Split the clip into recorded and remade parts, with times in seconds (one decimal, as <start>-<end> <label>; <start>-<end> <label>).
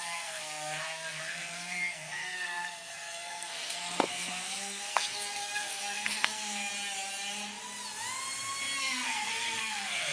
0.0-6.7 remade; 6.7-8.8 recorded; 8.8-10.1 remade